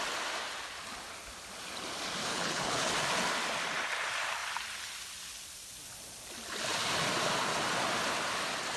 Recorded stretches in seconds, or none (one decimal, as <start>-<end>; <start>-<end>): 0.0-2.3; 2.9-8.8